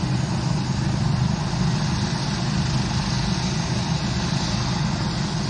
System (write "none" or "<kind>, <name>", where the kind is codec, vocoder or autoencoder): none